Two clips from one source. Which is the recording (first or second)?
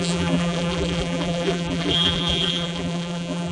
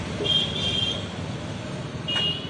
second